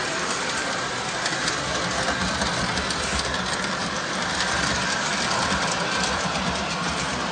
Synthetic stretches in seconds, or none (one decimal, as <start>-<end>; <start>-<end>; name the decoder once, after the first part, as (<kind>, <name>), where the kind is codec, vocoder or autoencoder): 0.0-0.6 (vocoder, BigVGAN v2); 3.6-7.3